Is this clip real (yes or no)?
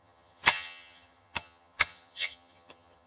no